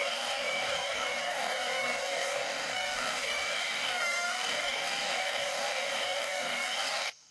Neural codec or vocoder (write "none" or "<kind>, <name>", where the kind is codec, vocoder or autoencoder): codec, DAC